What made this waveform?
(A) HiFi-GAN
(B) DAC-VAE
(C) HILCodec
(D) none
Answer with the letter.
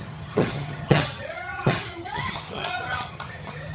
A